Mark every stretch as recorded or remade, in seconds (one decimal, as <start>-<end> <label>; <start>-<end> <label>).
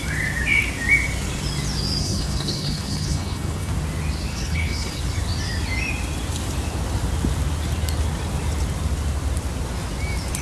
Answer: 0.0-2.0 recorded; 2.0-3.7 remade; 3.7-4.3 recorded; 4.3-5.0 remade; 5.0-10.4 recorded